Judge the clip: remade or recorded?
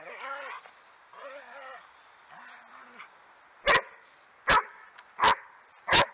recorded